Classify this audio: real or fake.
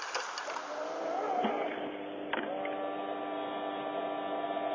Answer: real